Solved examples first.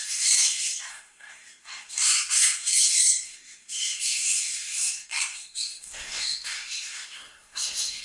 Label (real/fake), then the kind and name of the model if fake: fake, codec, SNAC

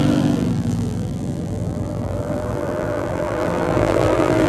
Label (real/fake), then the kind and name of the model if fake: fake, vocoder, BigVGAN v2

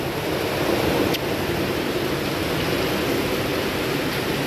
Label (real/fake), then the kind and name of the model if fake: real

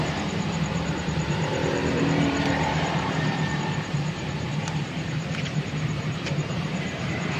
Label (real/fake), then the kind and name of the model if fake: fake, vocoder, BigVGAN v2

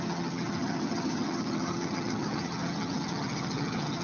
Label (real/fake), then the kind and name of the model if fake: fake, vocoder, HiFi-GAN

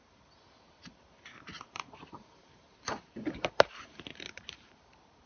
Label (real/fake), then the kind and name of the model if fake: fake, vocoder, BigVGAN v2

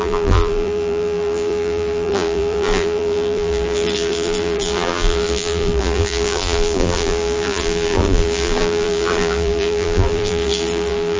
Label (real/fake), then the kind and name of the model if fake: fake, vocoder, BigVGAN v2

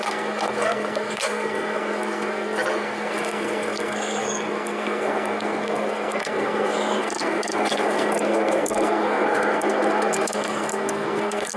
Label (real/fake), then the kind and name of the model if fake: fake, codec, SNAC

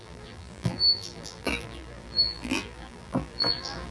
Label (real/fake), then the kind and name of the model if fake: fake, vocoder, BigVGAN v2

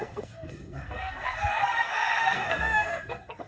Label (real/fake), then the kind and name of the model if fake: fake, codec, SNAC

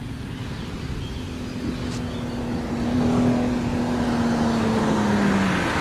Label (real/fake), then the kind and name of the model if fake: real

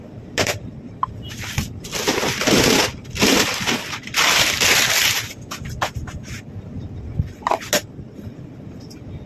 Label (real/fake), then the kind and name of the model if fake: real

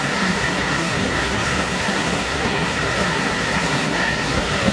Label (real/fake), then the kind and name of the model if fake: fake, codec, SNAC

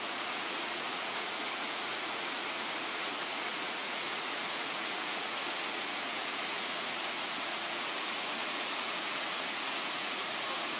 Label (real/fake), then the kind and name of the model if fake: fake, vocoder, Vocos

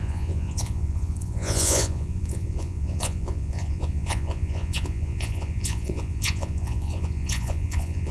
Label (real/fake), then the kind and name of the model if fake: fake, vocoder, Vocos